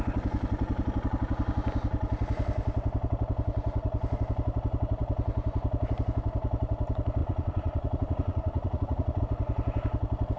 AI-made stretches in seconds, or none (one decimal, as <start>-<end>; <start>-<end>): 7.2-9.2